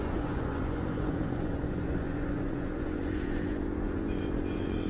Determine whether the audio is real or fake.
fake